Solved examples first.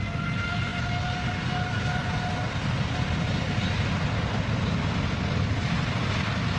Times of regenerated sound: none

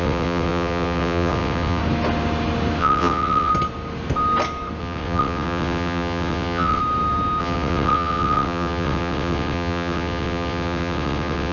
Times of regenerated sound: 0.0-1.8 (vocoder, WaveNeXt); 2.8-3.5; 4.8-6.8; 7.4-11.5